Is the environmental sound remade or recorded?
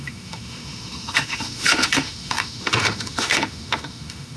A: remade